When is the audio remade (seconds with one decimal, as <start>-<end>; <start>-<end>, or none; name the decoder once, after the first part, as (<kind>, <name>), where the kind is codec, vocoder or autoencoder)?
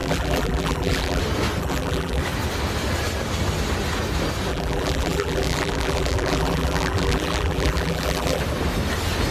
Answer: 0.0-1.2 (vocoder, BigVGAN v2); 1.6-2.2; 4.5-8.4